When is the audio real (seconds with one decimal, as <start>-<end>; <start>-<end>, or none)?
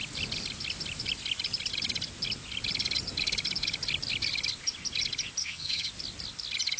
0.0-5.4; 5.9-6.8